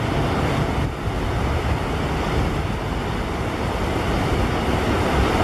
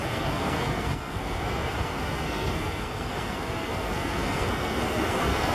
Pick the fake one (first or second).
second